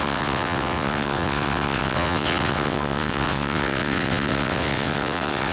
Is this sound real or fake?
fake